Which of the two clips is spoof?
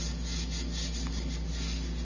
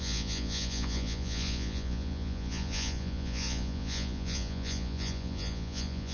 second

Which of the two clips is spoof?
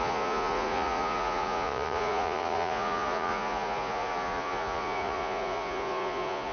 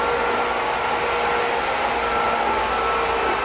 first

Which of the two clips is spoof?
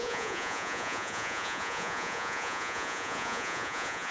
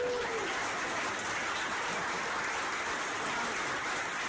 first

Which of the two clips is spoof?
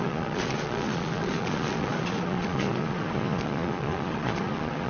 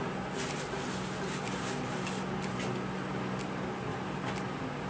first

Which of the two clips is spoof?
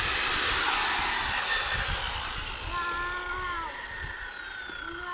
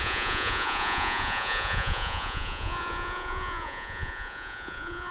second